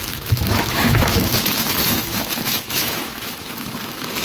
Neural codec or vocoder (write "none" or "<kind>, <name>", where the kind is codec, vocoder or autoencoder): autoencoder, DAC-VAE